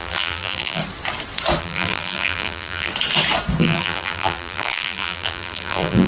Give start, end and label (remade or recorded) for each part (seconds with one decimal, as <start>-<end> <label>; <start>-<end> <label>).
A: 0.0-0.8 remade; 0.8-1.6 recorded; 1.6-2.9 remade; 2.9-3.6 recorded; 3.6-6.1 remade